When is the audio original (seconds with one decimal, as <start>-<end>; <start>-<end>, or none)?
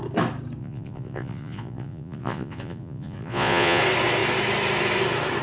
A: 0.0-0.6; 3.8-5.4